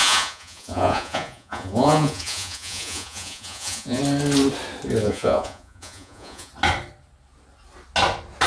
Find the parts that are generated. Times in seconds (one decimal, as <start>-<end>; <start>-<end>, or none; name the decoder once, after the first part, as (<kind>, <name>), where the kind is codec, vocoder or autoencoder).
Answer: 0.0-4.0 (vocoder, Vocos); 5.0-6.5